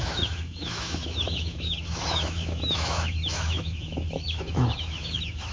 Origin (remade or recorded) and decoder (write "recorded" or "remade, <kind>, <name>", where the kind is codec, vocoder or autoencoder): remade, autoencoder, DAC-VAE